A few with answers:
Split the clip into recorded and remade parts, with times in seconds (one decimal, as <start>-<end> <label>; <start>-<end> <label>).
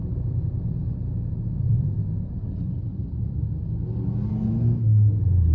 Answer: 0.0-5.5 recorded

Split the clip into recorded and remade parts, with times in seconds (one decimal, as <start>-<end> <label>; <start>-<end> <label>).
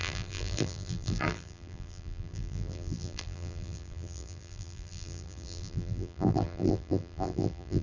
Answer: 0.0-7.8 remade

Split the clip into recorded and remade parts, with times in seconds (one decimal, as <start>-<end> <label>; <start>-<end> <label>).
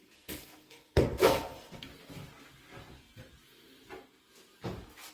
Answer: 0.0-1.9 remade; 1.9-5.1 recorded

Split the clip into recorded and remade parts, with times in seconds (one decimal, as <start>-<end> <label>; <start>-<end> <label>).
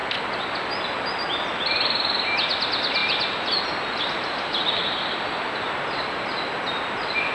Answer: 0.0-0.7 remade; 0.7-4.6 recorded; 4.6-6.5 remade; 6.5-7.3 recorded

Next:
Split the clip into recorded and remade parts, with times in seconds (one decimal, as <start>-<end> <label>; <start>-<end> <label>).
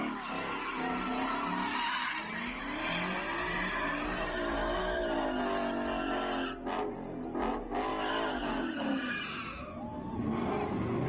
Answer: 0.0-11.1 recorded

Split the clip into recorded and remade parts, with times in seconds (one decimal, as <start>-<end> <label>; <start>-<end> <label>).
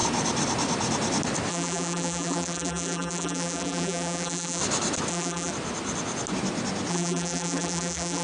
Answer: 0.0-1.5 recorded; 1.5-4.6 remade; 4.6-5.1 recorded; 5.1-5.5 remade; 5.5-6.9 recorded; 6.9-8.2 remade